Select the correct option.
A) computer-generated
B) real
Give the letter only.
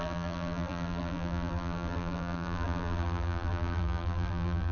A